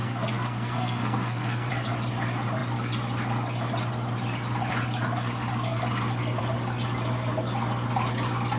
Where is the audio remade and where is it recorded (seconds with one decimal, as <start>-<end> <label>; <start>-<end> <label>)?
0.0-1.7 remade; 1.7-8.6 recorded